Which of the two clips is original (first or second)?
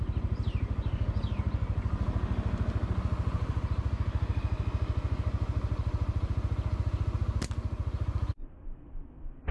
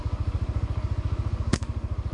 first